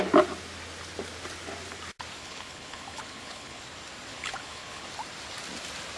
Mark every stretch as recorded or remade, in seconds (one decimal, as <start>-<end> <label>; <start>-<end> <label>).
0.0-2.2 recorded; 2.2-3.6 remade; 3.6-4.1 recorded; 4.1-4.9 remade; 4.9-6.0 recorded